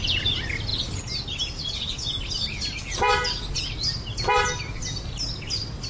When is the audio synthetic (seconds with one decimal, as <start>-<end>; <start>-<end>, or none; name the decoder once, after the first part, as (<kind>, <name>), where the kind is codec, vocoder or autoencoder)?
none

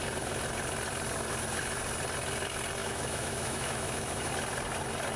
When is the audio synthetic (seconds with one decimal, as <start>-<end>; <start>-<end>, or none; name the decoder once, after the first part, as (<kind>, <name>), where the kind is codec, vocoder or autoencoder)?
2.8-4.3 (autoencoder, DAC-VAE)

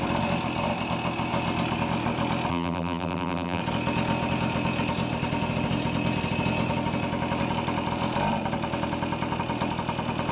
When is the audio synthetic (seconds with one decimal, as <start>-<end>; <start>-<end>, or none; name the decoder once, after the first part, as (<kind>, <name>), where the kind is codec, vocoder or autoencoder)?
2.5-3.6 (vocoder, BigVGAN v2)

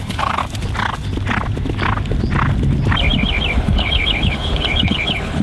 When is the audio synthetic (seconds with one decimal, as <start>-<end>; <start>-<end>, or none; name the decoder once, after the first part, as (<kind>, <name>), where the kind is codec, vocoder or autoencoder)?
0.0-0.4 (codec, HILCodec); 3.6-5.4